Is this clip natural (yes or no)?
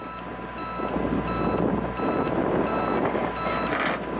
yes